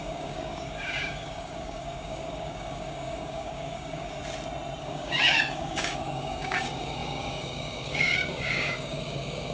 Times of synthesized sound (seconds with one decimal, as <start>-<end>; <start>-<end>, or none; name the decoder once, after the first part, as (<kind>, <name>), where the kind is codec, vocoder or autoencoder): 0.0-4.2 (codec, DAC); 4.8-9.5